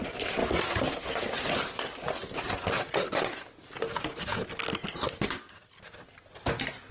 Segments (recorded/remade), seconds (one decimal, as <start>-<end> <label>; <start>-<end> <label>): 0.0-6.9 recorded